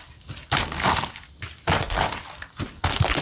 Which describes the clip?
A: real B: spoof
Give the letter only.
A